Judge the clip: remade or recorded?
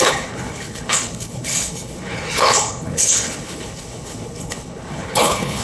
remade